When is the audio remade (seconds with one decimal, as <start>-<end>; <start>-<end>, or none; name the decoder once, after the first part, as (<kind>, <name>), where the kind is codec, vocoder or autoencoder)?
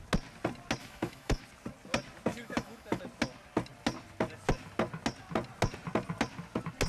0.8-1.4 (autoencoder, DAC-VAE); 2.3-3.0